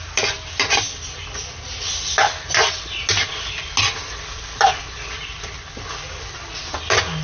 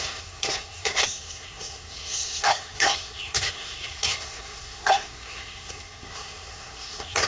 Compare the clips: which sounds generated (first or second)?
second